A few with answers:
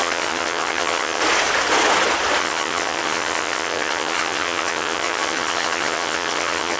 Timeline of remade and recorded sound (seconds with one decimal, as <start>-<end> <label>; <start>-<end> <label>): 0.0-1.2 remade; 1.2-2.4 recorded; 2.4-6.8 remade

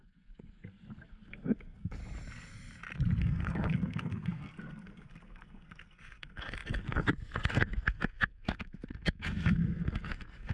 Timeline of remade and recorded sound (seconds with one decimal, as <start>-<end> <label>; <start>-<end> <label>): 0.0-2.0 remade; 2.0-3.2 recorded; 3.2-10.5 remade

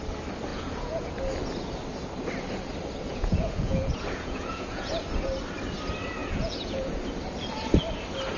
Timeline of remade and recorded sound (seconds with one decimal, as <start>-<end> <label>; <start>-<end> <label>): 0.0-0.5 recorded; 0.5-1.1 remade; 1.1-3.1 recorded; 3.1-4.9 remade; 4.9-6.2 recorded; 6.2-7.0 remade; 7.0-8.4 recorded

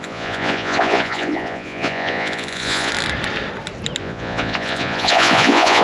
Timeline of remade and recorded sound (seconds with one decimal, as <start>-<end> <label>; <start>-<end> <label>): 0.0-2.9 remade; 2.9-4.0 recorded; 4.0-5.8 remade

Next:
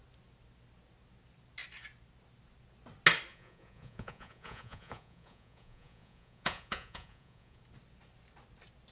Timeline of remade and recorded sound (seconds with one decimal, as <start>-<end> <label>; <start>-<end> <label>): 0.0-3.3 recorded; 3.3-7.6 remade; 7.6-8.9 recorded

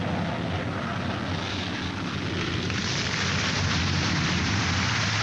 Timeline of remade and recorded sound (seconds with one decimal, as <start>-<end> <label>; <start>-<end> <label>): 0.0-5.2 recorded

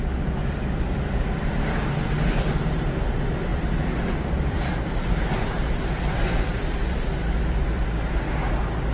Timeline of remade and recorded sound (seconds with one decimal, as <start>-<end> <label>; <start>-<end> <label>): 0.0-0.4 recorded; 0.4-1.4 remade; 1.4-3.5 recorded; 3.5-7.8 remade; 7.8-8.9 recorded